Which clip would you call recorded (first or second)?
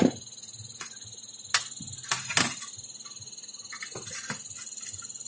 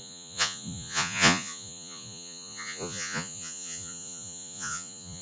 first